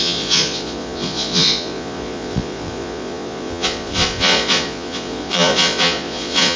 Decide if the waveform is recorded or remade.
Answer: remade